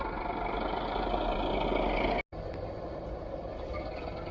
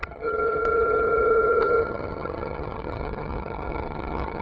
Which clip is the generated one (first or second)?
second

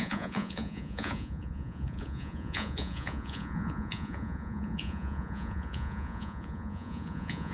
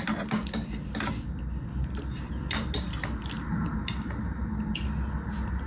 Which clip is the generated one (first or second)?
first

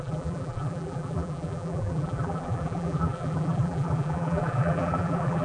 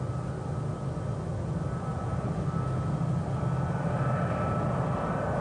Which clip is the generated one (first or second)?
first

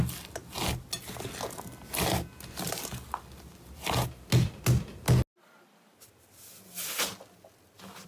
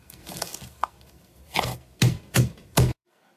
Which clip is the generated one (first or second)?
second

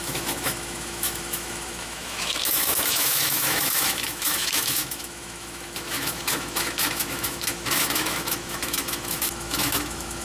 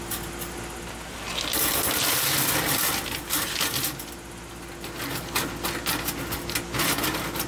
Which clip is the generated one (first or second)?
first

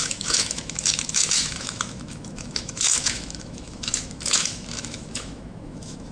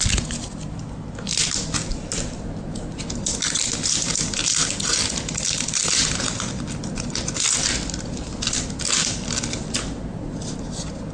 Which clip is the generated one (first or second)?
first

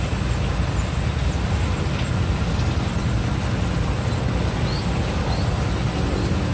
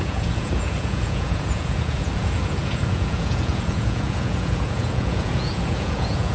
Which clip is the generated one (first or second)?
second